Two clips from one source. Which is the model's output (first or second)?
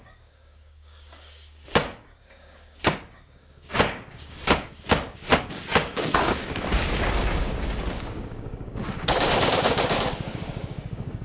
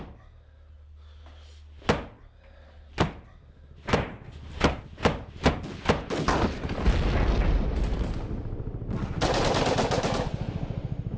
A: first